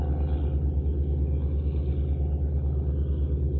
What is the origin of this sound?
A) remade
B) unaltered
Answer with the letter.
B